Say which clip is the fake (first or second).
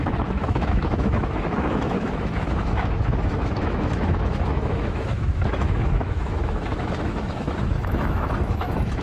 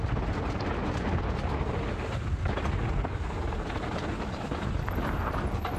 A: first